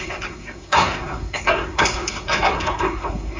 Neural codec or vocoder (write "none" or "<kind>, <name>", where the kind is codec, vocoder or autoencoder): codec, SNAC